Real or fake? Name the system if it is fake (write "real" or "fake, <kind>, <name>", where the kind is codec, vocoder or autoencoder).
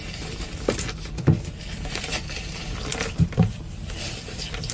real